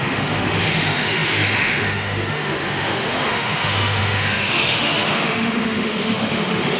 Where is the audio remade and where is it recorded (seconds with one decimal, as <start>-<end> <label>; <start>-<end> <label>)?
0.0-6.8 remade